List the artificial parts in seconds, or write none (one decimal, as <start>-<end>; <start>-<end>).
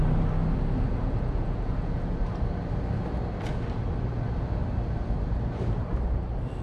0.9-2.2